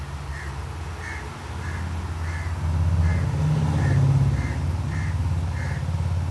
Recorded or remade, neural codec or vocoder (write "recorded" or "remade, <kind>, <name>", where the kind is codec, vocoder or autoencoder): recorded